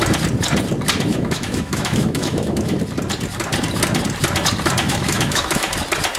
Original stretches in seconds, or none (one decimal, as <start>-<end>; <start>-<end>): 0.0-1.1; 2.8-4.8; 5.7-6.2